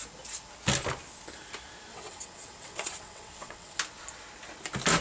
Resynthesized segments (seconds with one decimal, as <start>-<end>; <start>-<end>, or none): 1.9-3.8